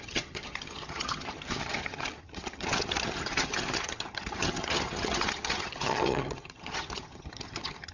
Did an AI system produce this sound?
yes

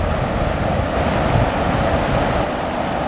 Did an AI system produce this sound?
no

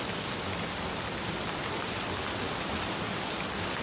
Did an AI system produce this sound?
no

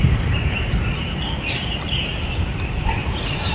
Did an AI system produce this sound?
no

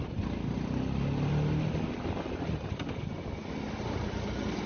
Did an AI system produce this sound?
no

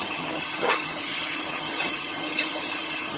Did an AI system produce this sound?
yes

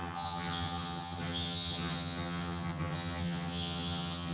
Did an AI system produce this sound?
yes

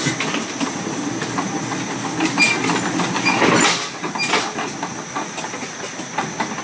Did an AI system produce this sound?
no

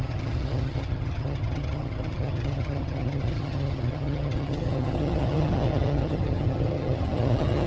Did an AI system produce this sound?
yes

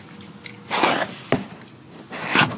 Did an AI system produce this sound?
no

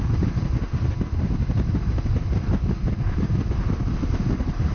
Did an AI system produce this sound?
no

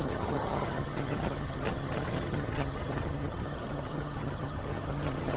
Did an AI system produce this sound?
yes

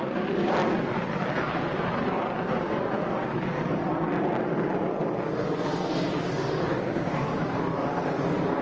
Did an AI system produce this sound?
no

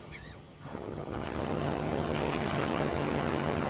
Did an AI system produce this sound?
yes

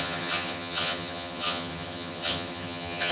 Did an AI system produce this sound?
yes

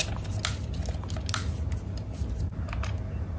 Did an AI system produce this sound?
no